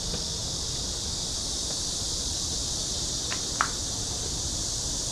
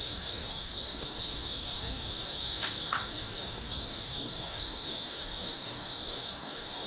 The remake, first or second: second